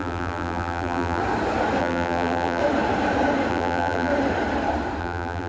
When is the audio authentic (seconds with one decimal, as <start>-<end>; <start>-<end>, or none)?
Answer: 1.2-1.8; 2.6-3.5; 4.1-5.0